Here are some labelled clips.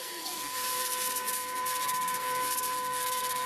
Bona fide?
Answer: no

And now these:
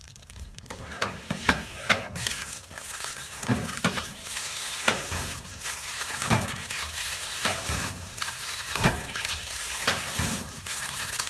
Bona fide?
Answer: no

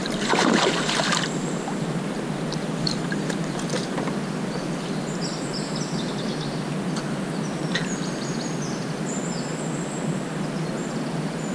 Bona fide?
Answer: yes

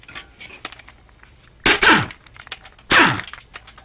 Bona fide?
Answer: yes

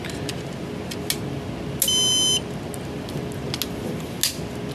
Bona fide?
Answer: yes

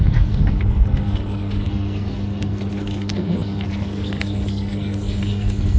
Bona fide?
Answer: no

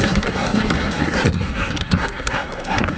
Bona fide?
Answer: no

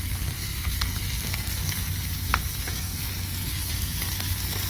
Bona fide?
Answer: no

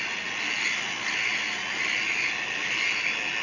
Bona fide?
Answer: yes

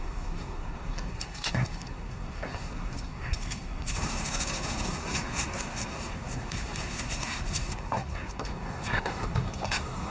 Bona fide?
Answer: no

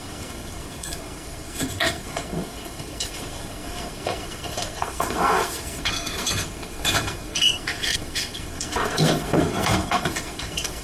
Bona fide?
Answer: no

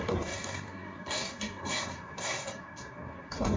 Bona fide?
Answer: no